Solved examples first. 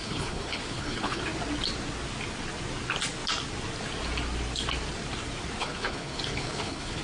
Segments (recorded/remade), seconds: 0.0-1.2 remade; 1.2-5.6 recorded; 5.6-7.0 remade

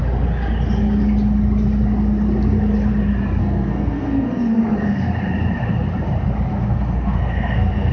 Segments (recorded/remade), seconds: 0.0-3.4 recorded; 3.4-5.1 remade; 5.1-6.5 recorded; 6.5-7.9 remade

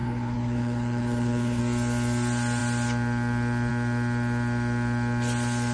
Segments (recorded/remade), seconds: 0.0-1.6 remade; 1.6-5.7 recorded

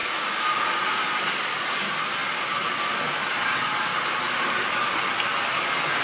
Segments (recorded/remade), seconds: 0.0-0.7 remade; 0.7-6.0 recorded

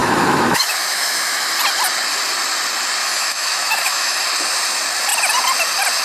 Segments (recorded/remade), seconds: 0.0-1.5 remade; 1.5-3.0 recorded; 3.0-4.2 remade; 4.2-6.0 recorded

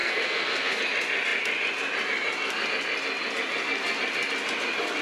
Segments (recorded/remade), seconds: 0.0-0.8 remade; 0.8-5.0 recorded